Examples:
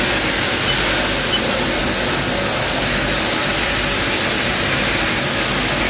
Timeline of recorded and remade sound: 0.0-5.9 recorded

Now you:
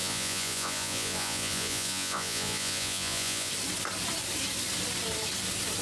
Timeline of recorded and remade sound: 0.0-3.5 remade; 3.5-5.8 recorded

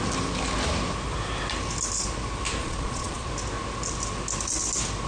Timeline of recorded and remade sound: 0.0-2.6 recorded; 2.6-3.3 remade; 3.3-5.1 recorded

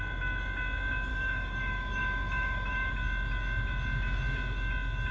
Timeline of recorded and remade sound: 0.0-1.1 recorded; 1.1-2.9 remade; 2.9-5.1 recorded

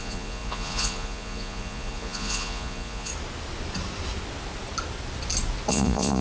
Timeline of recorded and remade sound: 0.0-3.1 remade; 3.1-5.7 recorded; 5.7-6.2 remade

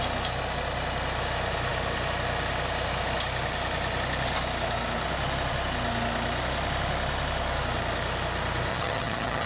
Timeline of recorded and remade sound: 0.0-8.7 recorded; 8.7-9.5 remade